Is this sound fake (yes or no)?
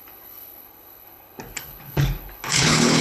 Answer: yes